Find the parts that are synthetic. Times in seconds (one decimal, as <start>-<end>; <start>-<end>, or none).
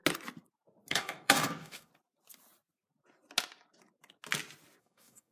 0.9-1.9; 4.8-5.3